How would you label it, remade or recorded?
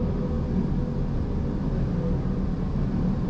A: recorded